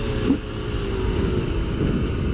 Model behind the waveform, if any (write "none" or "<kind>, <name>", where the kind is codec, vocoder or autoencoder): none